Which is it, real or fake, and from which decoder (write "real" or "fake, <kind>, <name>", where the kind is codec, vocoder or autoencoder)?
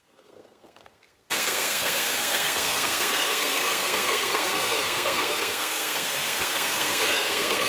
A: fake, codec, SNAC